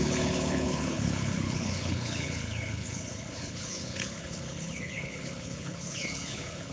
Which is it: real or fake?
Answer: fake